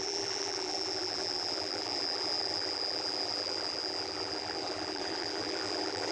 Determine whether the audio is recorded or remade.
remade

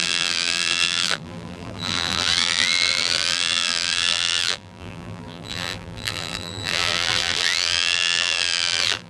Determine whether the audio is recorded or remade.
remade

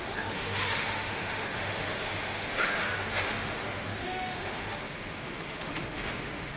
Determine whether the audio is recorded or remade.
remade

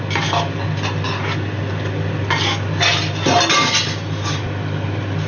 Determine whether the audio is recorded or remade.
recorded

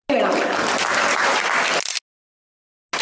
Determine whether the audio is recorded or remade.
recorded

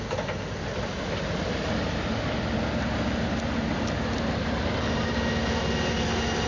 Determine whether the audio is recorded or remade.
recorded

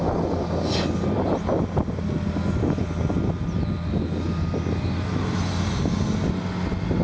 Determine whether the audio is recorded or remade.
recorded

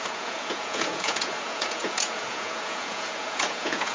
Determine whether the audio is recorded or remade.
remade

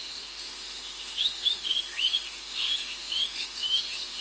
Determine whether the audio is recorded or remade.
remade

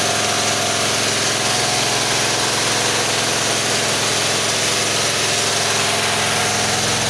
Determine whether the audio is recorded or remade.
recorded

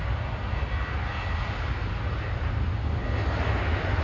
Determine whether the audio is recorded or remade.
recorded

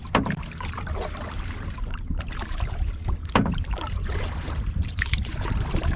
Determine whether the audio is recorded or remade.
remade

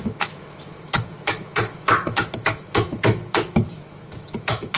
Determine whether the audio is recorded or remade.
remade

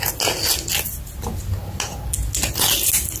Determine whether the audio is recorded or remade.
recorded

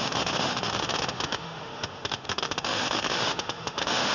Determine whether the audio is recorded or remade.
remade